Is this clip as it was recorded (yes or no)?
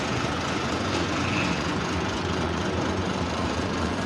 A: no